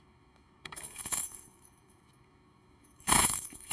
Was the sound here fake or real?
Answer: fake